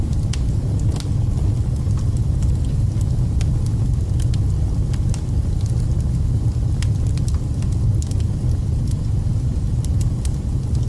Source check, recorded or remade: recorded